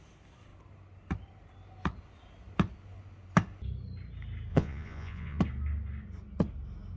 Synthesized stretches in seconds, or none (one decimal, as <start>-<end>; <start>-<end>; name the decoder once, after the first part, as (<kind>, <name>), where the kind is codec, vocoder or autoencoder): 4.5-5.4 (vocoder, Vocos)